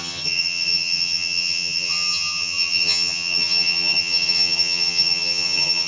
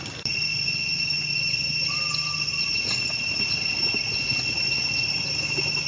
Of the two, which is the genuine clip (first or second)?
second